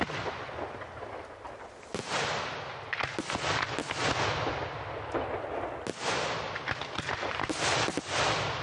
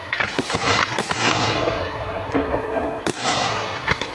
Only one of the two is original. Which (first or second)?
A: first